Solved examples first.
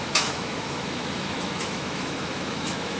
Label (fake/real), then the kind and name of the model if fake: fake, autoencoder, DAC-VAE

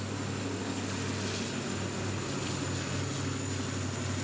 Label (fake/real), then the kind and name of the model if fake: real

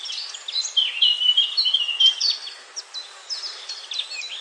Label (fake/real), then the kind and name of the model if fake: real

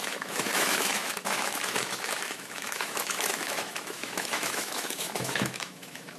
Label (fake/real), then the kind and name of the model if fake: fake, autoencoder, DAC-VAE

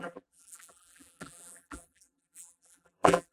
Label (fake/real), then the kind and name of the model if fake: fake, vocoder, BigVGAN v2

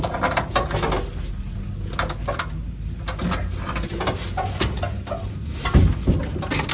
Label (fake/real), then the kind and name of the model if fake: real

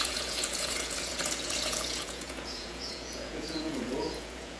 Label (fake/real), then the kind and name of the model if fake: fake, vocoder, Vocos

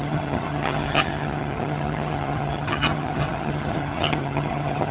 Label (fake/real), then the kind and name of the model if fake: fake, vocoder, HiFi-GAN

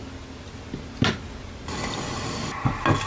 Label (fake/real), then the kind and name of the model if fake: real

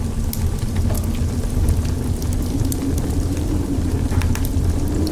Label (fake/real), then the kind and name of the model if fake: real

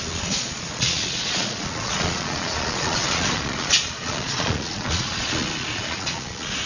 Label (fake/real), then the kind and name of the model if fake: fake, vocoder, Vocos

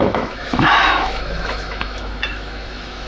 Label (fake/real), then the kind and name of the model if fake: fake, autoencoder, DAC-VAE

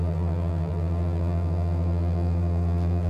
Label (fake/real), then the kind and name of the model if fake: fake, vocoder, BigVGAN v2